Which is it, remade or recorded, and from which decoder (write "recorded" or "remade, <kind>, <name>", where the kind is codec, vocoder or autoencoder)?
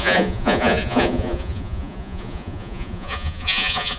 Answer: remade, vocoder, Vocos